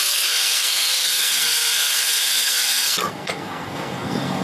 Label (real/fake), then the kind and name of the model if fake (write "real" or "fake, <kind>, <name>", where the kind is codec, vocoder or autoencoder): fake, codec, SNAC